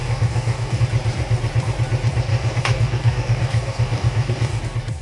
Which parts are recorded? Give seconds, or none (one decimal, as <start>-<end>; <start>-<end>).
0.8-2.3; 4.6-5.0